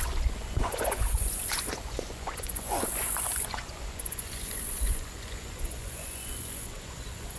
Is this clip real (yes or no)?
no